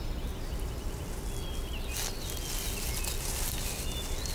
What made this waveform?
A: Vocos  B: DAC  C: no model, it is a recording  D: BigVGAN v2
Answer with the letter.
C